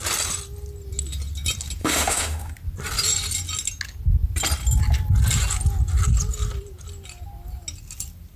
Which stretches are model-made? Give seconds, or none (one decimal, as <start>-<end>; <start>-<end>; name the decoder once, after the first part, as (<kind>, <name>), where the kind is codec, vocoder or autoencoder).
1.8-2.5 (autoencoder, DAC-VAE)